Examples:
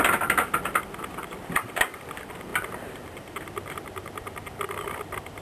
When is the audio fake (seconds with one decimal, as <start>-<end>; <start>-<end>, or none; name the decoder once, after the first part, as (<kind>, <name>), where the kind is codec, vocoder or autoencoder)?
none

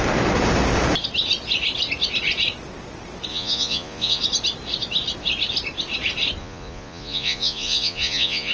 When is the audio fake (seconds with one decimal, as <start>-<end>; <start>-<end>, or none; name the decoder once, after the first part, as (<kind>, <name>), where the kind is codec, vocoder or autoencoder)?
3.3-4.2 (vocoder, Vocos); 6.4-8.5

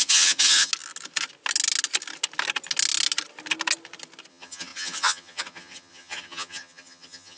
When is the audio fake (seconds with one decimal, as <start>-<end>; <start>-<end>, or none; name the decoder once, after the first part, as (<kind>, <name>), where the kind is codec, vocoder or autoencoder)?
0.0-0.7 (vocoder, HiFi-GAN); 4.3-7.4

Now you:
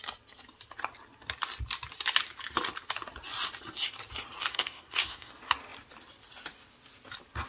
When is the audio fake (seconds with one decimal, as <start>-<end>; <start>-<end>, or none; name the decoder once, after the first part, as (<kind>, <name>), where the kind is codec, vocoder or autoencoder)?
4.5-5.3 (codec, SNAC)

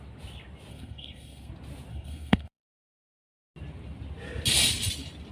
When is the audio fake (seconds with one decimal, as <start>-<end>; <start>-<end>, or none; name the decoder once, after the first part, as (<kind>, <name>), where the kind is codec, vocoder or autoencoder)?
0.7-1.5 (codec, SNAC); 1.9-2.7